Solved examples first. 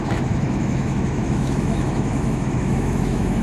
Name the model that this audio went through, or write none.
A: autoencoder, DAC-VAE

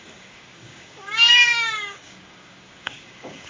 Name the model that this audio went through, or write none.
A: codec, DAC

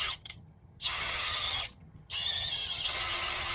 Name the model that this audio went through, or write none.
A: vocoder, HiFi-GAN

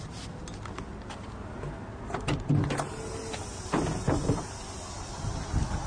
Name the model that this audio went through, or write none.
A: none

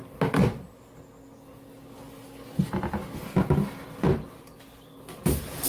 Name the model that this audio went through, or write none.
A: none